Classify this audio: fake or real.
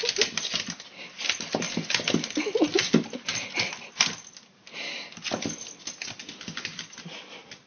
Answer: real